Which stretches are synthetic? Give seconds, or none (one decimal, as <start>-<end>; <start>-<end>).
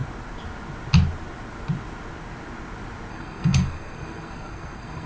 3.1-5.1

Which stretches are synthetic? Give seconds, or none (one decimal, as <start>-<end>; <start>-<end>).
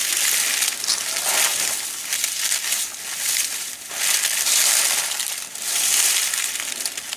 none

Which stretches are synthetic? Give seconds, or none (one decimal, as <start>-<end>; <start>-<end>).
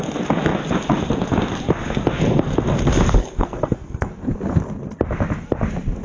3.2-4.1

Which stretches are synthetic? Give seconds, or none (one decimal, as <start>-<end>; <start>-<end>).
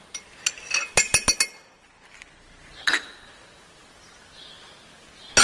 none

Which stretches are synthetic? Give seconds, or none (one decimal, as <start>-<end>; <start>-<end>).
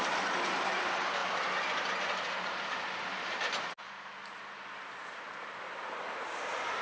none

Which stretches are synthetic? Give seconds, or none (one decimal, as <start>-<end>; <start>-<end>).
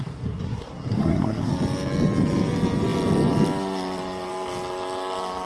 0.0-1.5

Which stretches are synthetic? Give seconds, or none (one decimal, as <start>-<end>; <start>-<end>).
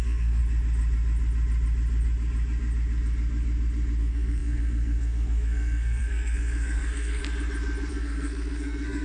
0.0-0.4; 4.0-7.2; 7.9-9.0